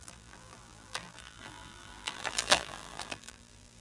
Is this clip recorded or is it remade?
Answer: remade